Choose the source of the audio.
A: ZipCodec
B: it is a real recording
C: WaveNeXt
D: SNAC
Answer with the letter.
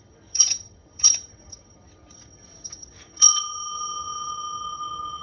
C